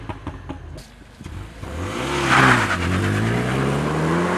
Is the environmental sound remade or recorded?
recorded